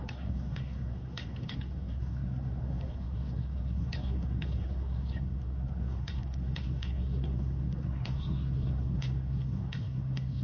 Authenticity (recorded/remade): remade